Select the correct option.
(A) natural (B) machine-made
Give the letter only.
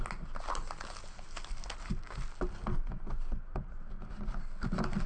A